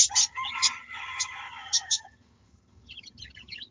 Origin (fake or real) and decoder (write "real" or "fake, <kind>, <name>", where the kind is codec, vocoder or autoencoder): fake, vocoder, HiFi-GAN